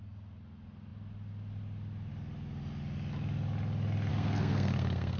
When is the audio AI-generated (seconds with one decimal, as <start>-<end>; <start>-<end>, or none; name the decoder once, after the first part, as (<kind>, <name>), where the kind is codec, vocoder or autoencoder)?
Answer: 4.1-5.2 (codec, SNAC)